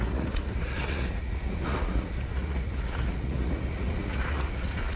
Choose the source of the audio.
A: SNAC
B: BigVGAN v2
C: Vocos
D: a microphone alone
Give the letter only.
C